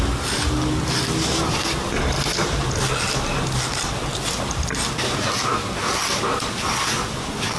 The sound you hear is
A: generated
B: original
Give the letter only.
B